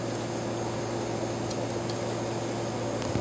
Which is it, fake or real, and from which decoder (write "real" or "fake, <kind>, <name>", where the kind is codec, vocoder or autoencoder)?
real